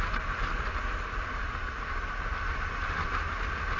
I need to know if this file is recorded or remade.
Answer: recorded